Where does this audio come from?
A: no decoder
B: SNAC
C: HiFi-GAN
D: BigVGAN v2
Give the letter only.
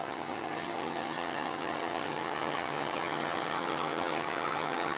C